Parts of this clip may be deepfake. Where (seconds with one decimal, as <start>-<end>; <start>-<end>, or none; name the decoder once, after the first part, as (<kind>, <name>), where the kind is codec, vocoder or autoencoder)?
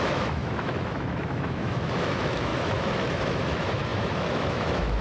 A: 0.0-5.0 (autoencoder, DAC-VAE)